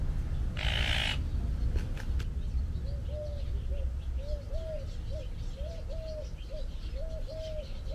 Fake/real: real